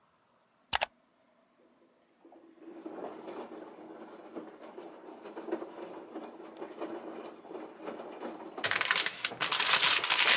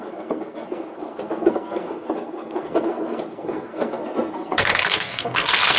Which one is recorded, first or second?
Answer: first